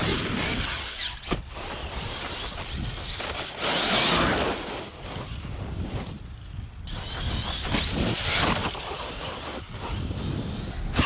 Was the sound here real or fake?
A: real